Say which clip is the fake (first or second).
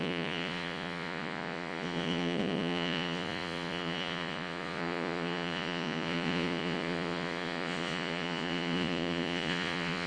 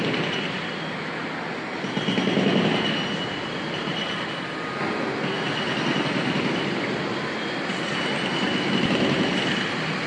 first